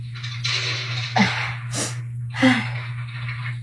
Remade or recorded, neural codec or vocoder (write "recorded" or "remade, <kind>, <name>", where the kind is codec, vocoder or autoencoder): recorded